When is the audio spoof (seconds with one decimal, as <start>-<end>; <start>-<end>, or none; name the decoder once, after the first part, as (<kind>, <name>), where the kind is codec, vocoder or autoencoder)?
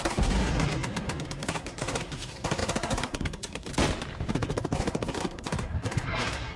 0.0-3.7 (codec, SNAC); 4.3-6.6